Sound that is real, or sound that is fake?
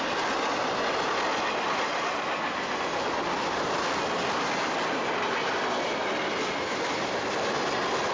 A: real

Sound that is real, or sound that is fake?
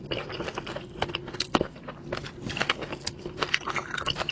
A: real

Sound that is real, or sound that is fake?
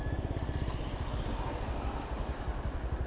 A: real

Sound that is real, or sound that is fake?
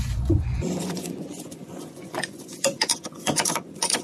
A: fake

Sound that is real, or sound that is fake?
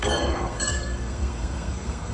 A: fake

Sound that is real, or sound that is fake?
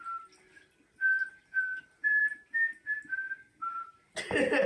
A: real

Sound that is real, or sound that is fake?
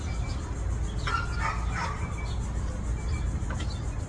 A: real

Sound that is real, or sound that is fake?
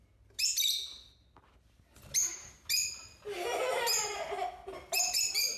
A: real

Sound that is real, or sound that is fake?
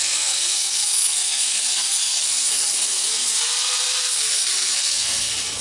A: fake